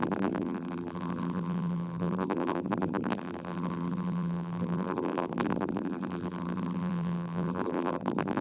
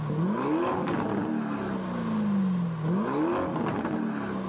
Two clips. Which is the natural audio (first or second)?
second